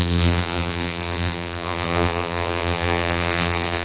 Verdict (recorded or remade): remade